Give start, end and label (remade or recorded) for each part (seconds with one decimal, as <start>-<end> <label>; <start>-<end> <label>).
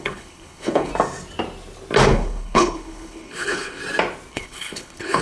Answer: 0.0-0.9 remade; 0.9-2.1 recorded; 2.1-3.8 remade; 3.8-4.3 recorded; 4.3-5.2 remade